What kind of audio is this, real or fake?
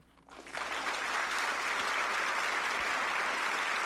real